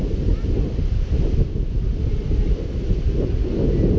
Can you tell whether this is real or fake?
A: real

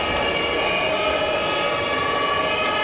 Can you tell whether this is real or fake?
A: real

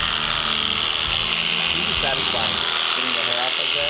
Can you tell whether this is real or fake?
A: real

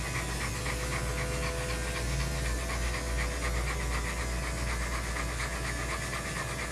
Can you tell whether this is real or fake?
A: real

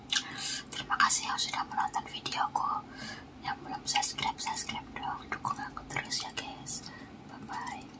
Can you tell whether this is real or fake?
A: real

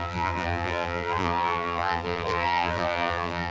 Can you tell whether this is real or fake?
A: fake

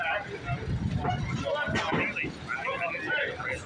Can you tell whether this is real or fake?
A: real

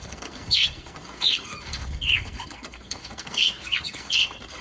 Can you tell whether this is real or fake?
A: fake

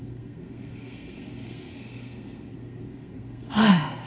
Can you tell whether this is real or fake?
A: fake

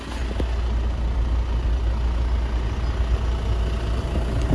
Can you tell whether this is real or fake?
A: real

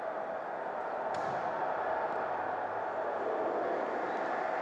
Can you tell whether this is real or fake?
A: real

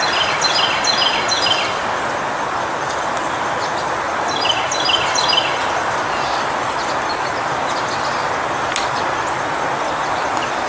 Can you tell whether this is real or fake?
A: real